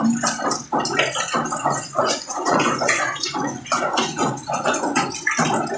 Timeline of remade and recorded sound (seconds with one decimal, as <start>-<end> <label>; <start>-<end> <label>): 0.0-1.6 recorded; 1.6-5.1 remade; 5.1-5.8 recorded